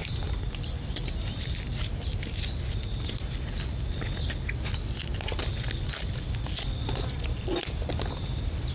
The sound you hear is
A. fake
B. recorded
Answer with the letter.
B